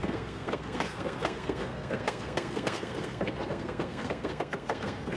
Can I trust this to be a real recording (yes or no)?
no